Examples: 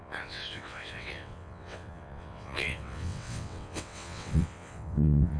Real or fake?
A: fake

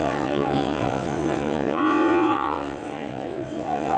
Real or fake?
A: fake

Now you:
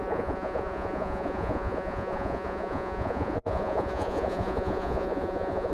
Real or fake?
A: fake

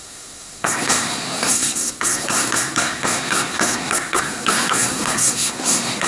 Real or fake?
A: fake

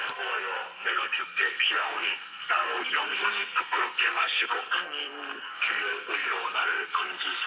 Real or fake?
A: fake